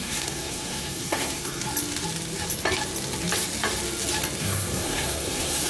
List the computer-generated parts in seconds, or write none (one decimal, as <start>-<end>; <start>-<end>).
0.0-1.6; 4.4-5.7